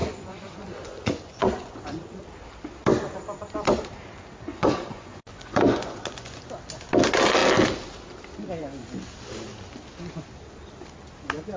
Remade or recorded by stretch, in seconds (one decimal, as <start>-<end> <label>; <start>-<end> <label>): 0.0-2.2 remade; 2.2-4.5 recorded; 4.5-6.4 remade; 6.4-11.6 recorded